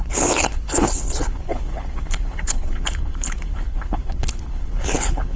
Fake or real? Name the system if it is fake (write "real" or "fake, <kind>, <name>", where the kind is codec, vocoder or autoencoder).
fake, codec, HILCodec